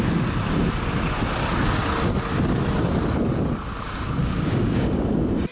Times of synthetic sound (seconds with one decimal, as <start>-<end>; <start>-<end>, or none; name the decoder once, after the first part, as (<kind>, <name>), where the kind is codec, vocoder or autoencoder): 4.2-4.9 (codec, DAC)